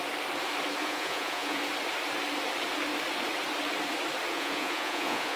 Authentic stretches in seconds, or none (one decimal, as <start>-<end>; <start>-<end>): 0.0-0.8; 1.6-4.3